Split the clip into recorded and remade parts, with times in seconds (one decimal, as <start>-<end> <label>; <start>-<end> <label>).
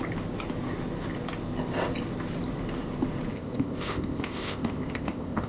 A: 0.0-3.3 recorded; 3.3-5.5 remade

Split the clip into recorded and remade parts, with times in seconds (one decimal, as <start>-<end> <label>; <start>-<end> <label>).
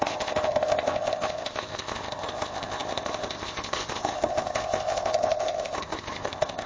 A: 0.0-6.7 remade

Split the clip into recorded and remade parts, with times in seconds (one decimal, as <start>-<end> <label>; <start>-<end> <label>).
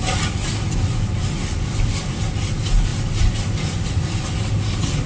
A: 0.0-5.1 recorded